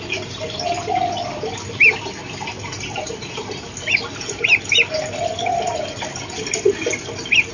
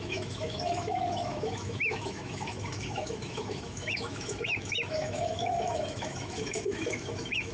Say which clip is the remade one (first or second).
second